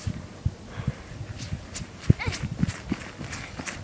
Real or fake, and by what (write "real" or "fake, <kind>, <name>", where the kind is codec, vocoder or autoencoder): real